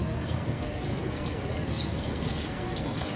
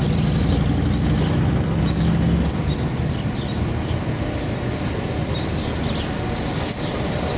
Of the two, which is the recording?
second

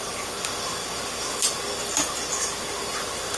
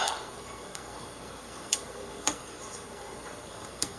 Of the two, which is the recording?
first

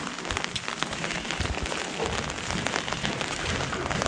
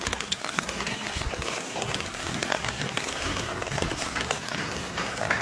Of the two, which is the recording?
first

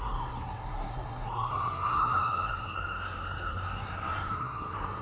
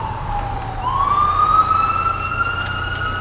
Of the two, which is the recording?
second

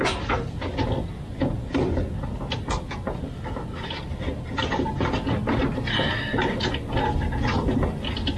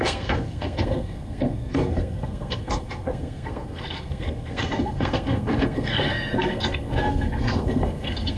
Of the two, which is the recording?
first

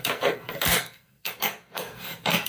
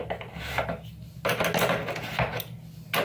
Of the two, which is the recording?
second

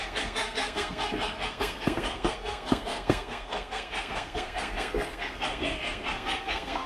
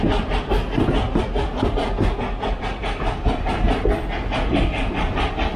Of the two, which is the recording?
second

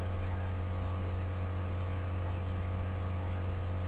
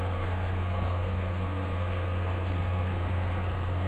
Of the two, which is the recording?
first